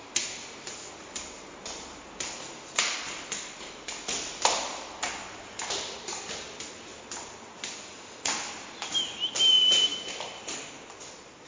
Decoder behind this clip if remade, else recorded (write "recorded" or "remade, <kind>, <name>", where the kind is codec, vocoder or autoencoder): recorded